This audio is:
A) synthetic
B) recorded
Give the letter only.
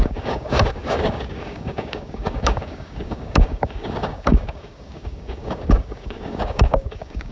A